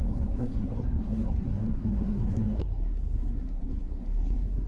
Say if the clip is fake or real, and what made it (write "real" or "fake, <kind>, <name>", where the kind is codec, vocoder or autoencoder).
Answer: fake, codec, SNAC